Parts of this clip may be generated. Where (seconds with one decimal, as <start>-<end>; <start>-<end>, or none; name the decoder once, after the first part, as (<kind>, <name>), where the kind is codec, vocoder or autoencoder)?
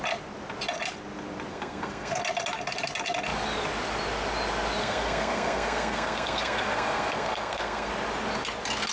1.5-2.2 (codec, SNAC); 4.8-7.9